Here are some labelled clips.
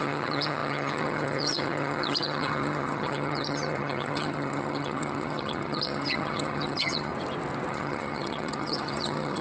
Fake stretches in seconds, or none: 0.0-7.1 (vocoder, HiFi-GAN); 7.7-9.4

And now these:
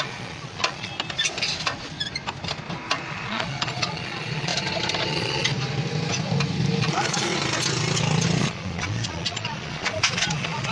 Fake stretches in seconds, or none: 0.0-0.9 (vocoder, Vocos); 3.1-4.5; 5.1-5.5; 6.8-7.3; 8.4-10.7

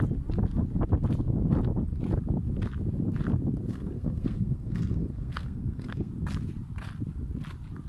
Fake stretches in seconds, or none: 3.7-6.1 (codec, SNAC)

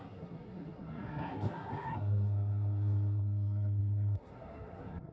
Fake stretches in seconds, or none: 0.0-5.1 (codec, SNAC)

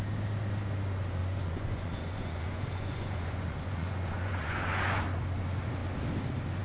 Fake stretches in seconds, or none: 1.2-5.0 (vocoder, Vocos)